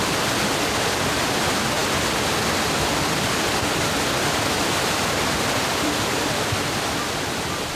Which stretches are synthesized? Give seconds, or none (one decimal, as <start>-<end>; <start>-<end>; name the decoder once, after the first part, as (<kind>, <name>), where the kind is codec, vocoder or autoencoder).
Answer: 0.0-7.8 (vocoder, BigVGAN v2)